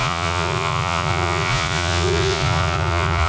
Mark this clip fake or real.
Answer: fake